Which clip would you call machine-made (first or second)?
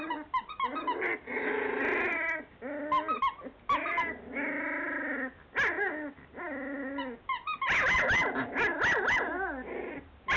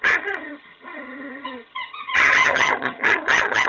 second